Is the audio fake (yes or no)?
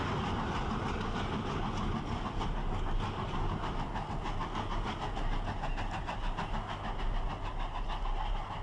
no